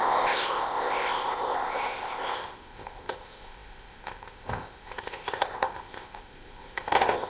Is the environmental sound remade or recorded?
remade